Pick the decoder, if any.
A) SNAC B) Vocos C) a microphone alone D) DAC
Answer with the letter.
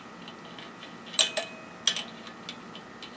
C